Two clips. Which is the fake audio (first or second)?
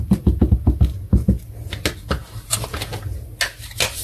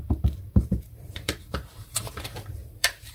second